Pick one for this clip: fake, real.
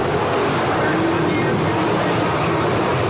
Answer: fake